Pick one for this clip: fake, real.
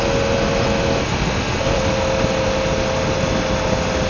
real